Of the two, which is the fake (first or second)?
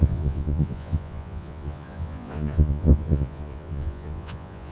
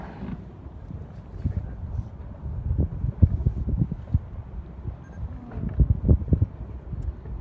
first